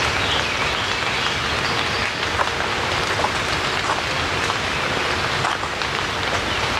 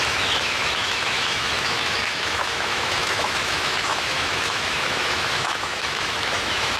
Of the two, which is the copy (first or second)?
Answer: second